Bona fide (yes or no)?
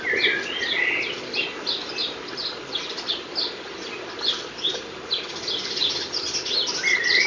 yes